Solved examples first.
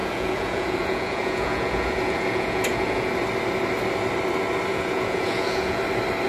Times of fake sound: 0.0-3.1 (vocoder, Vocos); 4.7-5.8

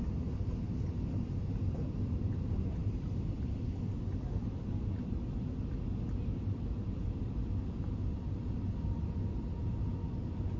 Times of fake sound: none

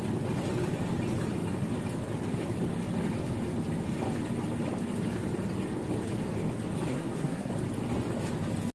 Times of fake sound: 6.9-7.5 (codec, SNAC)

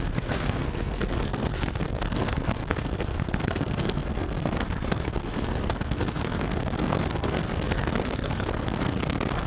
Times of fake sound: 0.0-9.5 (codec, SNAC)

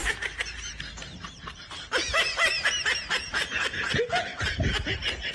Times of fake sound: 3.2-4.3 (vocoder, Vocos)

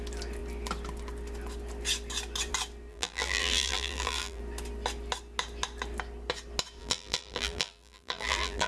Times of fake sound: 2.9-4.4 (vocoder, BigVGAN v2); 6.8-8.7